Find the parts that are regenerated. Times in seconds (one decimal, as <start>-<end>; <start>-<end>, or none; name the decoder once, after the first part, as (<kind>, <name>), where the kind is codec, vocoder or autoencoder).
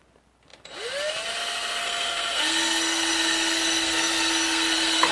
1.8-5.1 (codec, SNAC)